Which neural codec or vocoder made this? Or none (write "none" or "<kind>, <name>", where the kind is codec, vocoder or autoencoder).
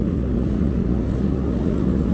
vocoder, Vocos